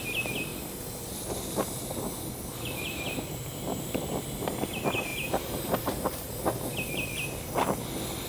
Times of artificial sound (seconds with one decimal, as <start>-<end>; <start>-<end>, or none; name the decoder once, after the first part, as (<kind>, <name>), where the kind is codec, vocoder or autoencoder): 5.1-6.3 (vocoder, BigVGAN v2)